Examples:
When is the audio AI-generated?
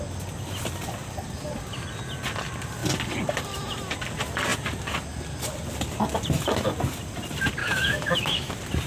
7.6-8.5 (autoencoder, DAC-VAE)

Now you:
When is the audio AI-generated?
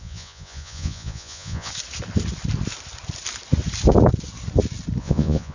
0.0-1.7 (vocoder, Vocos); 5.0-5.5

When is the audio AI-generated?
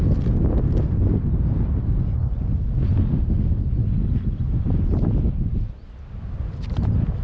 3.1-3.6 (autoencoder, DAC-VAE)